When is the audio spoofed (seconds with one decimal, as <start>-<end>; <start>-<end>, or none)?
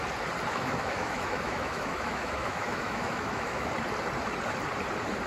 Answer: 0.5-3.7